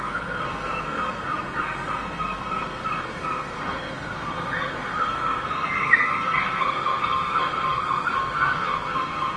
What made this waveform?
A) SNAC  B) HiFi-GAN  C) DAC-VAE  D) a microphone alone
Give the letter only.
A